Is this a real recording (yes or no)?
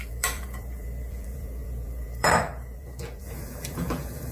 no